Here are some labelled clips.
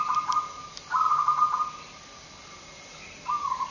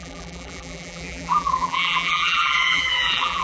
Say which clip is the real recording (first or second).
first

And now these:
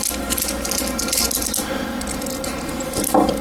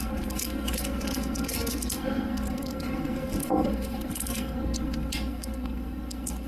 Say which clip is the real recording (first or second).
first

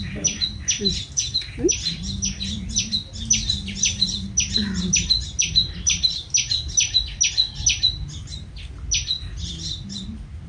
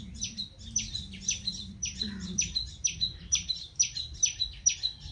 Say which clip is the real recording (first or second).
first